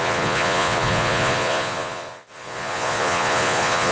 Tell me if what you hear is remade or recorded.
remade